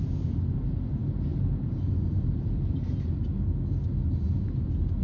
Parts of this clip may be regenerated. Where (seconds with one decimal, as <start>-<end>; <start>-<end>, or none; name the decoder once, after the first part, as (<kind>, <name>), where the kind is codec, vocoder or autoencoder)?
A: 1.3-1.9 (vocoder, BigVGAN v2)